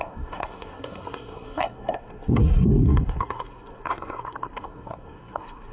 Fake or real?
fake